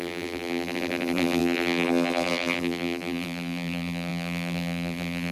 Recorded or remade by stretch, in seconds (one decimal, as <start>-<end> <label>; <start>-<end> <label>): 0.0-5.3 remade